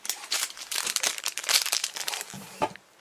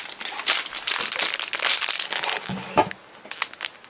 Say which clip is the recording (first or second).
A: second